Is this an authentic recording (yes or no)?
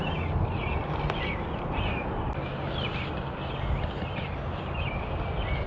yes